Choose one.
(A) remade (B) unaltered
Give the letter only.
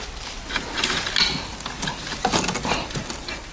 B